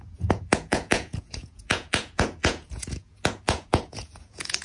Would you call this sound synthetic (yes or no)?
yes